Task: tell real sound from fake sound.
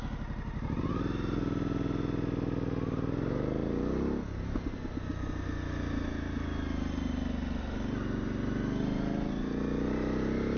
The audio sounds real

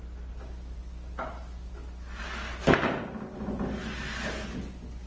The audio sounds real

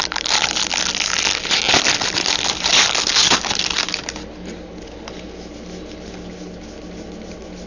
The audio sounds real